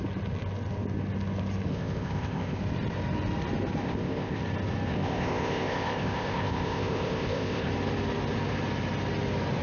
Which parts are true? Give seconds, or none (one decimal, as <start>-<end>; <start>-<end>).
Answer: 0.0-1.7; 2.6-3.8; 4.4-4.9; 7.7-9.6